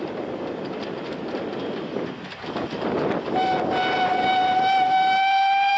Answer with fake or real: real